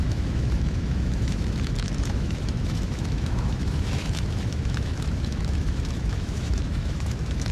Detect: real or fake fake